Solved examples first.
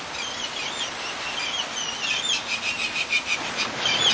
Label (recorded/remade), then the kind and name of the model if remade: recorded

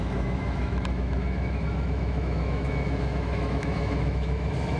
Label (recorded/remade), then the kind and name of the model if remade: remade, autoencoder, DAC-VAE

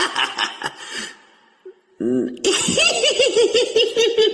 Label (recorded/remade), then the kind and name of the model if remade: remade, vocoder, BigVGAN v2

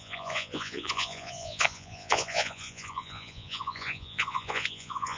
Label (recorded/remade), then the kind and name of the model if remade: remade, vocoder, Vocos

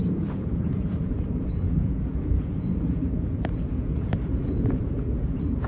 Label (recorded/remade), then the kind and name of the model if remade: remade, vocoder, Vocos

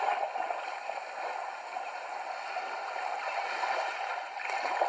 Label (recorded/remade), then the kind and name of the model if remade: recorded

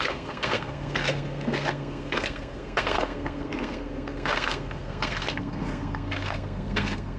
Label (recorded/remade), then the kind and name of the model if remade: remade, codec, SNAC